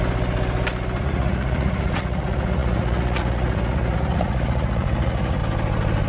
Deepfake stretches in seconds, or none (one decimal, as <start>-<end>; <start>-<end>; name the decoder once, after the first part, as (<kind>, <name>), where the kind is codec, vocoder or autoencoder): 1.0-5.4 (vocoder, Vocos)

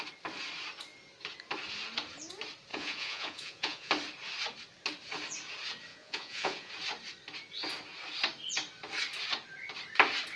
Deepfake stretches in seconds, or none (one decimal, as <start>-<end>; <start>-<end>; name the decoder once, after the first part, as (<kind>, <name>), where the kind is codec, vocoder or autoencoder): 2.7-3.9 (vocoder, Vocos); 5.9-6.7